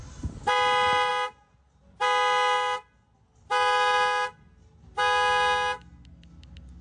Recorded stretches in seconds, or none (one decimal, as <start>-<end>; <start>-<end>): 0.0-6.8